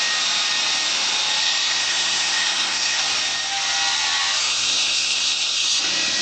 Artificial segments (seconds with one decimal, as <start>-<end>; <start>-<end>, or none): 1.4-3.0; 4.4-5.8